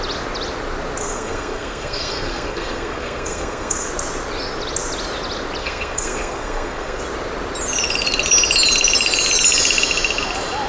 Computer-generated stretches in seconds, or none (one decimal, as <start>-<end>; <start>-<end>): 1.0-3.9; 5.6-7.0